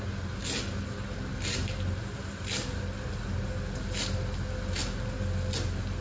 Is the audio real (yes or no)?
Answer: yes